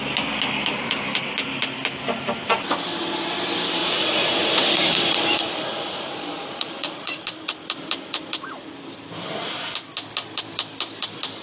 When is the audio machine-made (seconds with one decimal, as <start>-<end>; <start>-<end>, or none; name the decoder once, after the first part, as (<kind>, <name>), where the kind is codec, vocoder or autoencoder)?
3.8-7.2 (vocoder, Vocos)